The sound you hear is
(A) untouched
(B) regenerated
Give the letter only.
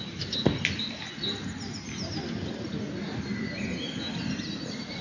A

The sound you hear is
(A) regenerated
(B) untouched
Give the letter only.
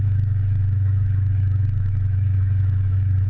A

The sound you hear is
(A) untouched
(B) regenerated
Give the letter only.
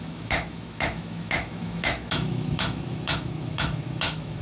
B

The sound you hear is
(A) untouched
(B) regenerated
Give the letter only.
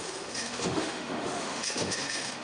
B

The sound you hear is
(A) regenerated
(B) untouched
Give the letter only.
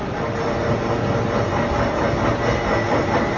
B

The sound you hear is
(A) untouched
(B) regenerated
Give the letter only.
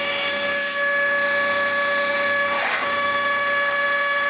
B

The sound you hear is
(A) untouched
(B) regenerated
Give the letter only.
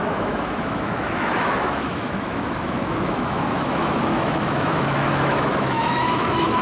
B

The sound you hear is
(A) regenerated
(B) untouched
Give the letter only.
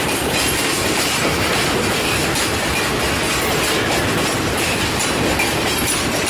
B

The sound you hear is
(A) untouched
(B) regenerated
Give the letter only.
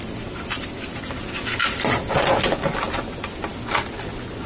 A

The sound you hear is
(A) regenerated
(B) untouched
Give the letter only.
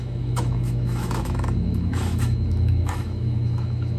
A